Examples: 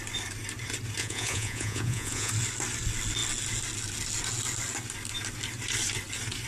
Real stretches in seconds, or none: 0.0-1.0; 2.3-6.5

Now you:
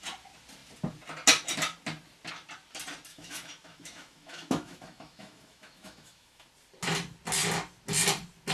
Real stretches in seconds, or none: 0.0-3.1; 6.5-8.5

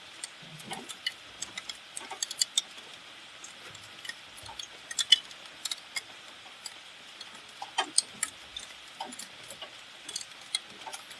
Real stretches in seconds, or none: 0.0-11.2

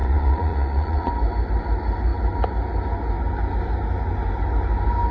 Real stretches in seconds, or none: 1.1-5.1

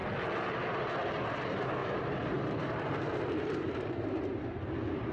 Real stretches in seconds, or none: 0.0-1.3

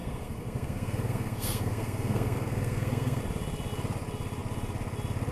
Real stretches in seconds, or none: 3.2-5.3

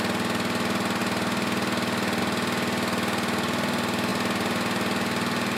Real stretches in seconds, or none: 0.0-5.6

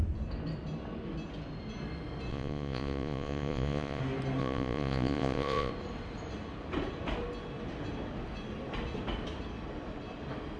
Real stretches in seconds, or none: 0.0-2.3; 4.0-4.4; 5.7-10.6